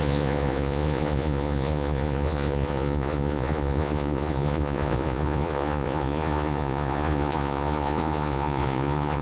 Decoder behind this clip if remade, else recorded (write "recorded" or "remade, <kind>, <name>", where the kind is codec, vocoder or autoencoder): remade, vocoder, Vocos